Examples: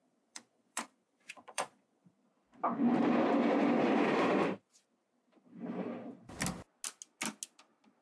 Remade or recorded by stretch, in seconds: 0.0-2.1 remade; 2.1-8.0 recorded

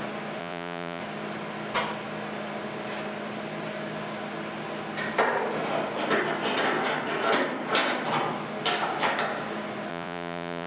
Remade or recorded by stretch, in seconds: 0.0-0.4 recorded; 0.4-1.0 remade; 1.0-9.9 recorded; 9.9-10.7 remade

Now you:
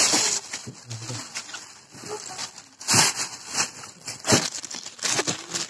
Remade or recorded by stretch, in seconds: 0.0-5.7 recorded

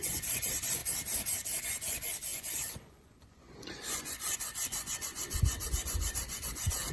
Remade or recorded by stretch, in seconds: 0.0-0.8 remade; 0.8-1.6 recorded; 1.6-6.9 remade

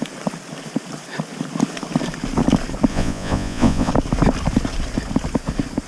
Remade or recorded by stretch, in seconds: 0.0-2.9 recorded; 2.9-3.9 remade; 3.9-5.9 recorded

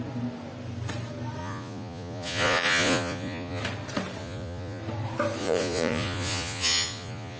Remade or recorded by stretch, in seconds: 0.0-1.4 recorded; 1.4-3.6 remade; 3.6-4.2 recorded; 4.2-4.8 remade; 4.8-5.4 recorded; 5.4-7.4 remade

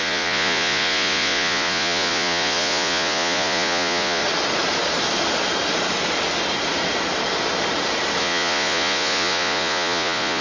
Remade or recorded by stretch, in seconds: 0.0-4.2 remade; 4.2-8.2 recorded; 8.2-10.4 remade